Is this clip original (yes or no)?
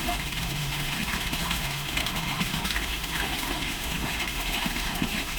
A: no